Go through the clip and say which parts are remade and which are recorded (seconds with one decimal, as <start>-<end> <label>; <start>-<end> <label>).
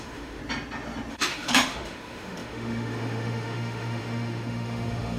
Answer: 0.0-0.4 remade; 0.4-1.1 recorded; 1.1-5.2 remade